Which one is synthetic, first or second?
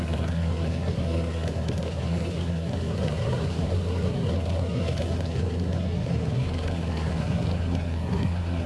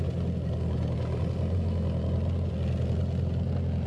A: first